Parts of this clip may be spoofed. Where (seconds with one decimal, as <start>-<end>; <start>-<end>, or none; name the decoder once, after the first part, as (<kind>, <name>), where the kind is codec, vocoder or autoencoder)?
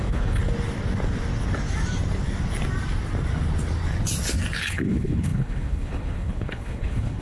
0.0-0.4 (codec, HILCodec); 4.7-7.2